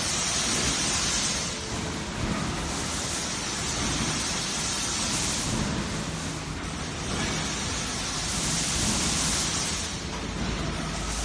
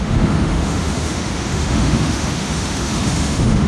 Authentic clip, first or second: first